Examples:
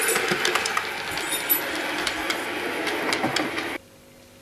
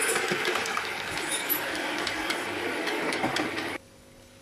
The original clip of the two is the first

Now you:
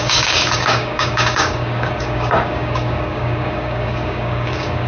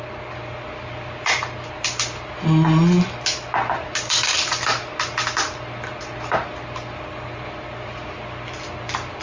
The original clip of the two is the second